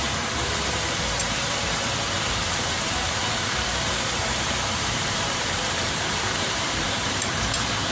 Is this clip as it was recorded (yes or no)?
no